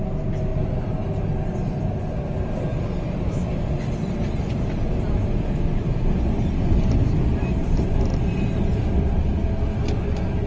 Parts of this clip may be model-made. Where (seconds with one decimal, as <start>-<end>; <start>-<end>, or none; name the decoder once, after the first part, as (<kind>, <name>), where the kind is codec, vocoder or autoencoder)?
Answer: 0.5-1.8 (vocoder, BigVGAN v2); 7.3-8.2